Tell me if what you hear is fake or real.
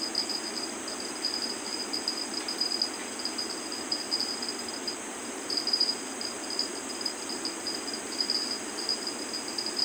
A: real